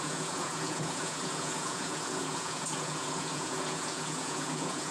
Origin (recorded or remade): remade